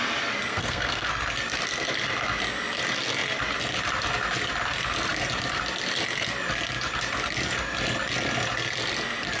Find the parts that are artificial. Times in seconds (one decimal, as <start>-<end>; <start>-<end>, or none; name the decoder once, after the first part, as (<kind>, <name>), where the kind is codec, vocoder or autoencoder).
0.5-1.1 (codec, SNAC)